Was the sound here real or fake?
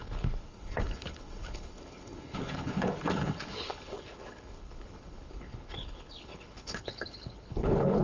fake